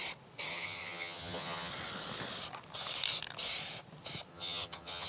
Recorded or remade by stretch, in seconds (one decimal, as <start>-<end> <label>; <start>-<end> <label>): 0.0-0.5 recorded; 0.5-1.7 remade; 1.7-4.3 recorded; 4.3-5.1 remade